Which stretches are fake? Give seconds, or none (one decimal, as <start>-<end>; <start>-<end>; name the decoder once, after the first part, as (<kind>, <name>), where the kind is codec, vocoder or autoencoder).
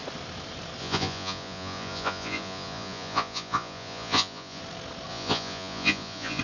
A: 0.8-4.6 (vocoder, Vocos); 5.1-6.4